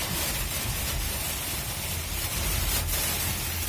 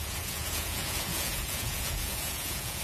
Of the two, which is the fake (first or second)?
second